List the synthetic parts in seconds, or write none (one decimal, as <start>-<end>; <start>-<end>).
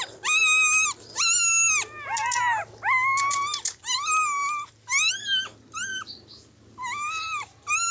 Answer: none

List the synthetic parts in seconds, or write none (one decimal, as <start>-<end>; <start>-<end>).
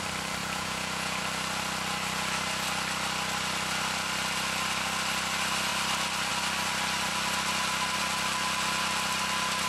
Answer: 0.4-1.2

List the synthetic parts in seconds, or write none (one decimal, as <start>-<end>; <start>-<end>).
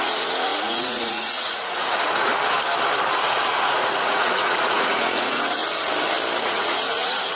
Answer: 0.0-2.3; 3.1-5.6; 6.4-7.4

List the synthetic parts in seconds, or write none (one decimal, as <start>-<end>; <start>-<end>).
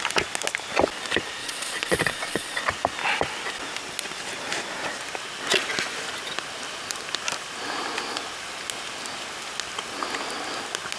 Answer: 1.4-2.6